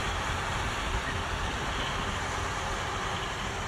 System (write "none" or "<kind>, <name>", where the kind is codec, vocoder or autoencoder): none